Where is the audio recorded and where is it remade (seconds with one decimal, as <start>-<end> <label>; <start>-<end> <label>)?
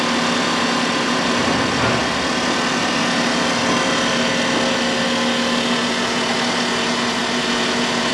0.0-8.1 recorded